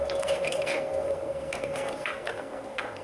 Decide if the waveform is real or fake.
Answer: fake